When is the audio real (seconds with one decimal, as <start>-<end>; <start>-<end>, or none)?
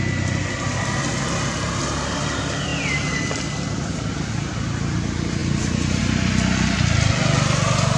0.0-8.0